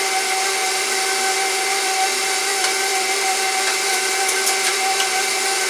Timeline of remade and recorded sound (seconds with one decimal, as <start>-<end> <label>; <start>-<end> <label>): 0.0-5.7 remade

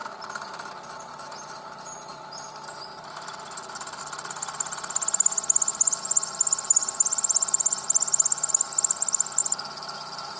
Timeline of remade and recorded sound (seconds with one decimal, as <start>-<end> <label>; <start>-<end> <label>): 0.0-4.0 remade; 4.0-5.7 recorded; 5.7-8.5 remade; 8.5-9.4 recorded; 9.4-10.4 remade